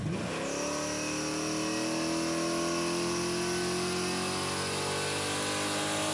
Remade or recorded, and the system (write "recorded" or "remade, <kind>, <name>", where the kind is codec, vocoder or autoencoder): recorded